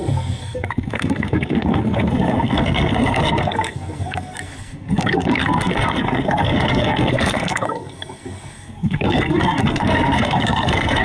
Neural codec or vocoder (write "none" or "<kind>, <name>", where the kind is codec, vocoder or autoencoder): codec, SNAC